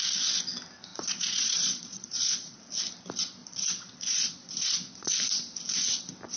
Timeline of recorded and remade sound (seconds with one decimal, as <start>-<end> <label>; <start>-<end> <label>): 0.0-0.9 recorded; 0.9-2.6 remade; 2.6-3.4 recorded; 3.4-5.1 remade; 5.1-6.4 recorded